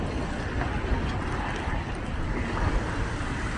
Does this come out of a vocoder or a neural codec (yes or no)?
no